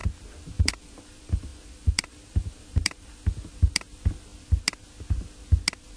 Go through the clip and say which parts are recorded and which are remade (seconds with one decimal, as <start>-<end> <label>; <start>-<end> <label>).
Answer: 0.0-0.8 recorded; 0.8-4.3 remade; 4.3-6.0 recorded